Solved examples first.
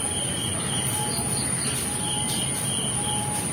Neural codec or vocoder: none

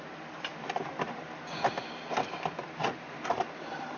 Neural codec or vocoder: none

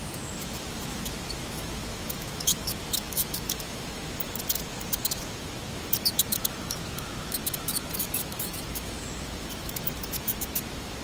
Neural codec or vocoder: autoencoder, DAC-VAE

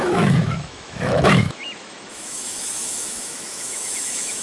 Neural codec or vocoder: autoencoder, DAC-VAE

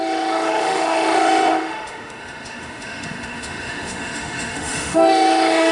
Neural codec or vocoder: autoencoder, DAC-VAE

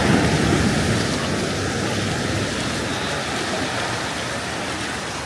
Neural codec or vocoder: none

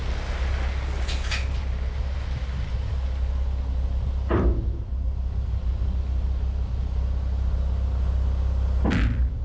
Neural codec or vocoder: none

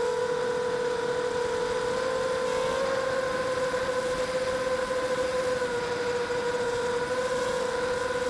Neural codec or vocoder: none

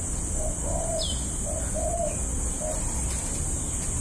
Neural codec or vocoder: none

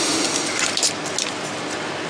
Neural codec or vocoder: none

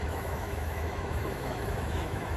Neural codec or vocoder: autoencoder, DAC-VAE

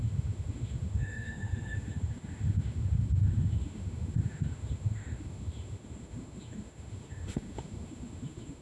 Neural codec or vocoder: autoencoder, DAC-VAE